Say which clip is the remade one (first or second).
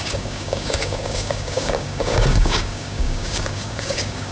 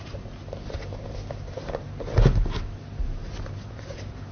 first